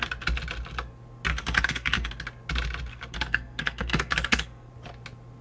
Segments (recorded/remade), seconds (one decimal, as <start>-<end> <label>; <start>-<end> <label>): 0.0-1.3 recorded; 1.3-2.1 remade; 2.1-2.9 recorded; 2.9-4.7 remade; 4.7-5.4 recorded